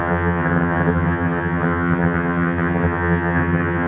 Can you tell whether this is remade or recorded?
remade